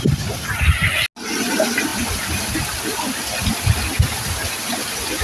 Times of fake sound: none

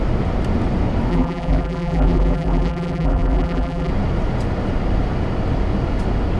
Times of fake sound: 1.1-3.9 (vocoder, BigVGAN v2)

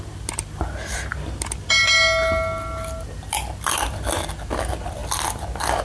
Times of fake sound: none